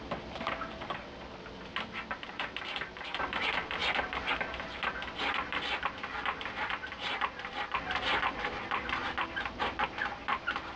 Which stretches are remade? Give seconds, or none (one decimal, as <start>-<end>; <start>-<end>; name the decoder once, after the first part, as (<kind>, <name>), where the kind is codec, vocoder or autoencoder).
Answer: 0.0-1.7 (vocoder, BigVGAN v2); 2.3-3.8; 9.0-10.8